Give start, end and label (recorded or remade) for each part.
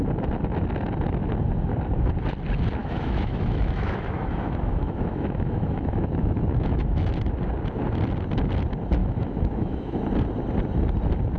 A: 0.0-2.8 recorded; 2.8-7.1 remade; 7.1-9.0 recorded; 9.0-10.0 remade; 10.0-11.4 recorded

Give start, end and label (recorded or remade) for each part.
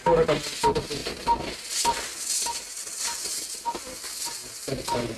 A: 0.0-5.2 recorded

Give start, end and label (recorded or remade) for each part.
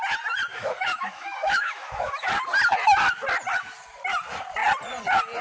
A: 0.0-0.5 recorded; 0.5-2.3 remade; 2.3-5.4 recorded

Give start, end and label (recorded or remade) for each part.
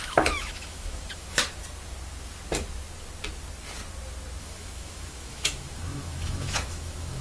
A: 0.0-1.4 remade; 1.4-4.4 recorded; 4.4-7.2 remade